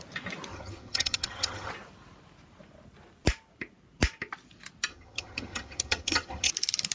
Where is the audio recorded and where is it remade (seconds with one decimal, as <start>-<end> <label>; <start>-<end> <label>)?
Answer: 0.0-0.5 recorded; 0.5-1.7 remade; 1.7-4.9 recorded; 4.9-6.5 remade; 6.5-6.9 recorded